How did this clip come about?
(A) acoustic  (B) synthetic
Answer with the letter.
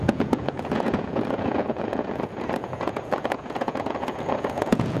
B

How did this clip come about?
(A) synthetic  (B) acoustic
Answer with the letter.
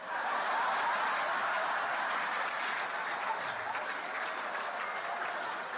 B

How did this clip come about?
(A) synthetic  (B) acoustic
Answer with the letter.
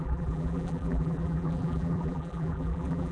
A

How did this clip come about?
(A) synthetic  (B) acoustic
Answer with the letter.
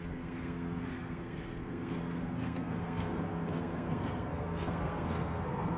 A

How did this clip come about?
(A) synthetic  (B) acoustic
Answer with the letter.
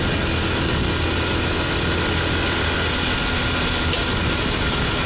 B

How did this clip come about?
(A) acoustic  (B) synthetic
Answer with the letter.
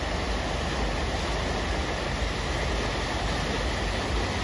A